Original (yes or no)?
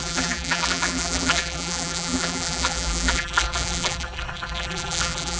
no